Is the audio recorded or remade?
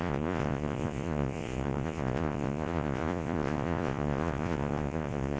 remade